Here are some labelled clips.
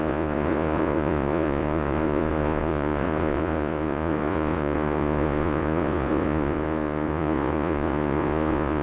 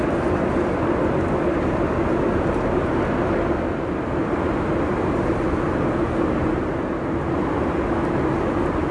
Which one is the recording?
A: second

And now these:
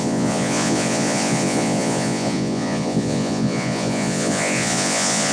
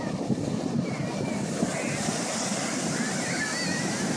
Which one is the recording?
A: second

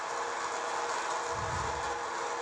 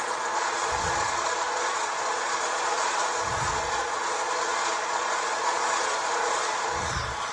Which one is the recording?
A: first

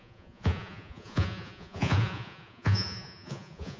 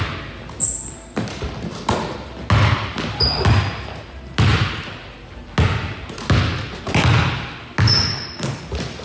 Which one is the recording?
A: second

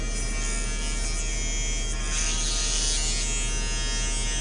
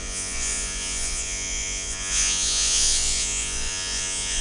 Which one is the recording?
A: first